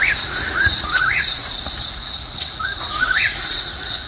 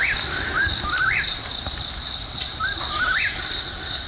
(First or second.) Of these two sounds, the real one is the second